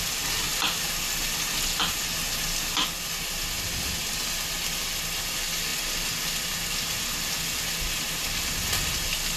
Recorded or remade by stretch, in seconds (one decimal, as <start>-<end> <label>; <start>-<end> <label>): 0.0-5.7 recorded; 5.7-6.4 remade; 6.4-9.4 recorded